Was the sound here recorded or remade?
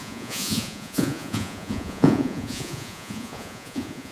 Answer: remade